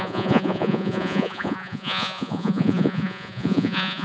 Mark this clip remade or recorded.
remade